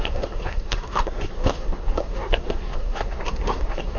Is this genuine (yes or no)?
no